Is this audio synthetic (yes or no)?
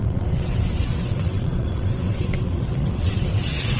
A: yes